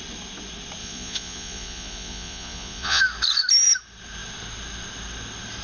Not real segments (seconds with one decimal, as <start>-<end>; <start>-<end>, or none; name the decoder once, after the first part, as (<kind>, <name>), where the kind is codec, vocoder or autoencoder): 0.8-3.0 (vocoder, Vocos)